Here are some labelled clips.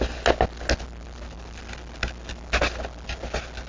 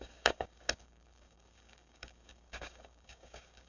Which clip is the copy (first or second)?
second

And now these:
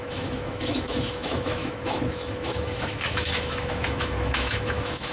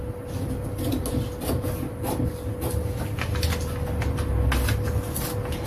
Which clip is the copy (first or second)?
first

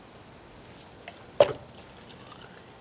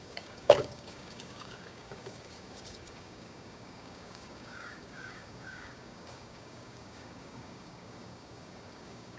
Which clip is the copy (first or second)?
second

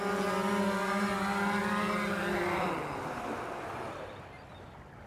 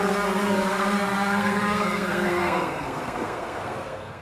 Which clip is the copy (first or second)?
second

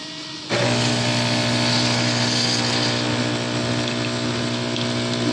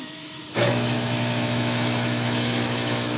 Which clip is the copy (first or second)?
second